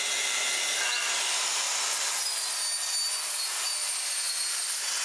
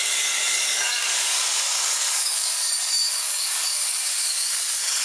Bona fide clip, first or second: first